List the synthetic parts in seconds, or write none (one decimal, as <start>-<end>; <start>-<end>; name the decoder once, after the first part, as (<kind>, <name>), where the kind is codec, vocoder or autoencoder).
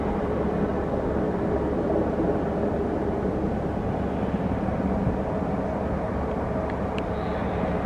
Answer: none